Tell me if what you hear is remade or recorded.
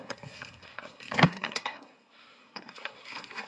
remade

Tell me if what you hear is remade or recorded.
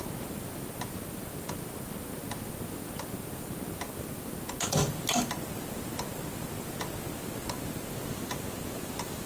recorded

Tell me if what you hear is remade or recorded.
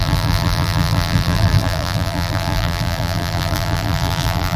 remade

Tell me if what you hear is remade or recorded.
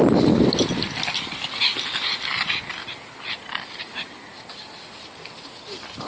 recorded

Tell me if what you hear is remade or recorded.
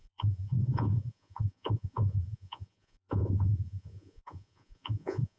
remade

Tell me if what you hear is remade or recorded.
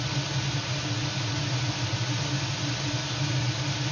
recorded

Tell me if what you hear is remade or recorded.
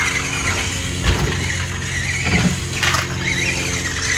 recorded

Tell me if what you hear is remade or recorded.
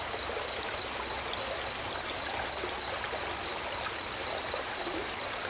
recorded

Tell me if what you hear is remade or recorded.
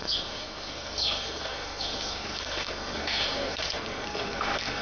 remade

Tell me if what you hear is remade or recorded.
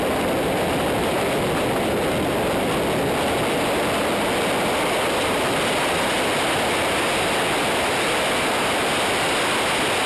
recorded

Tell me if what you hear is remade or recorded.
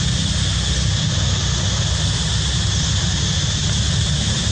recorded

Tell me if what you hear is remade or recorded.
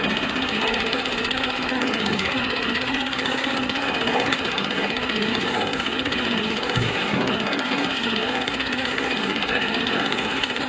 remade